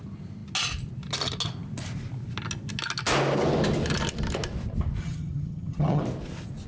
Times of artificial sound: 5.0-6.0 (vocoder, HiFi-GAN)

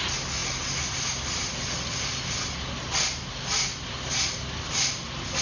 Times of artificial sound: none

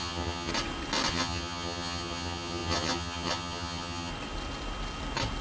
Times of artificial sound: 0.0-0.5 (vocoder, HiFi-GAN); 1.1-4.1